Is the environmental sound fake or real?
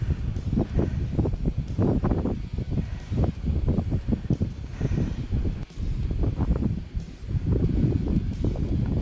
fake